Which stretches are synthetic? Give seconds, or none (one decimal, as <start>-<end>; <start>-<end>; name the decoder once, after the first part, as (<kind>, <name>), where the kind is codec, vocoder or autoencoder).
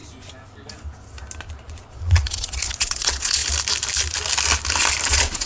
1.5-3.4 (vocoder, Vocos); 5.1-5.5